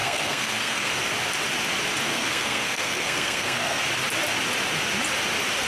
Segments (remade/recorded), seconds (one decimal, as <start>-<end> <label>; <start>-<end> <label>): 0.0-0.9 remade; 0.9-2.1 recorded; 2.1-3.8 remade; 3.8-5.7 recorded